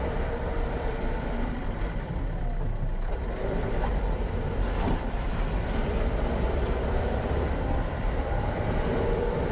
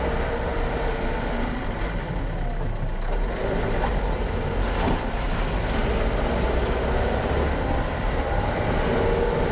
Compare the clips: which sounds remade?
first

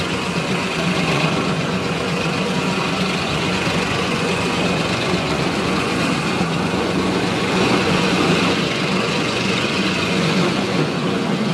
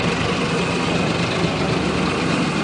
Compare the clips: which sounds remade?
first